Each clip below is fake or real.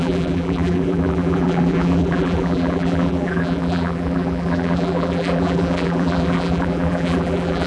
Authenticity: fake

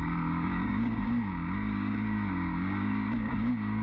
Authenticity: fake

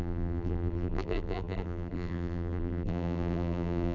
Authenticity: fake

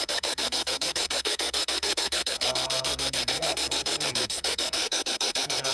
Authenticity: fake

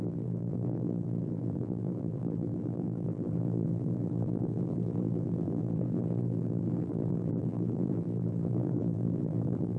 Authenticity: fake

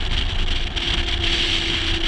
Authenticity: real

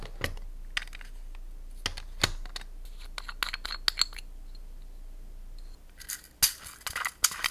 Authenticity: real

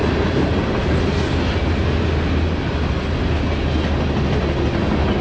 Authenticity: real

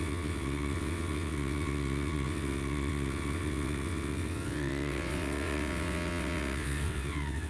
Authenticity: fake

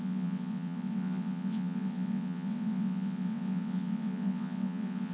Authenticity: fake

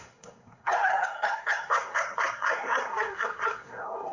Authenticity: fake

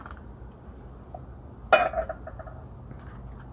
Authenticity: real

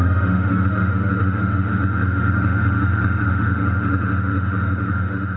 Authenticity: fake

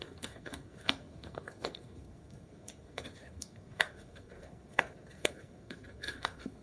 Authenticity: fake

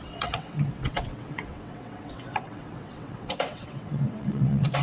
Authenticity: fake